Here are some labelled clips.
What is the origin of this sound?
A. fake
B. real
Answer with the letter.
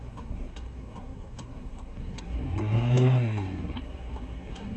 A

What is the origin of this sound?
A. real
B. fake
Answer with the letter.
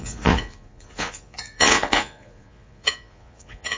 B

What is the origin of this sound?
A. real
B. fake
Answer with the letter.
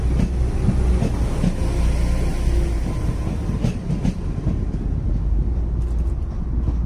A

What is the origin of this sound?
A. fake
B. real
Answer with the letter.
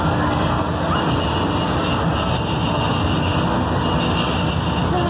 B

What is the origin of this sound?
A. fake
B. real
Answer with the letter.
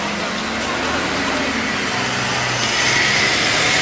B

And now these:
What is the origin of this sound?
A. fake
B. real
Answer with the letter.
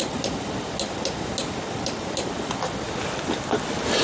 B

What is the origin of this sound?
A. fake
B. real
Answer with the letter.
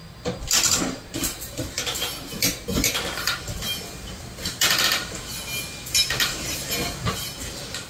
B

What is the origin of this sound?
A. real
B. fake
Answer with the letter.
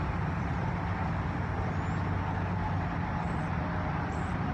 A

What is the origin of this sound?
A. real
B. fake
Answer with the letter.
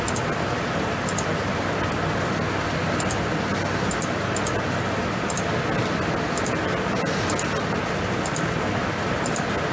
A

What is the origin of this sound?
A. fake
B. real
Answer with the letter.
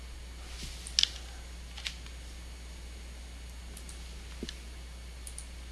B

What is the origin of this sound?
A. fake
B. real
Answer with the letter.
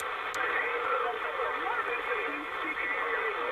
B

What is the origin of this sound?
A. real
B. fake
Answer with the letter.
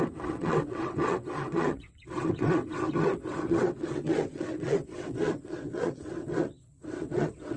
B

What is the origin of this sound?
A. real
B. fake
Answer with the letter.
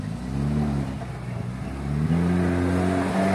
A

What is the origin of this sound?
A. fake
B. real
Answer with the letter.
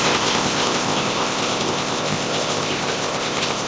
A